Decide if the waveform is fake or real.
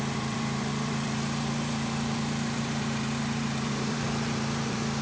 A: fake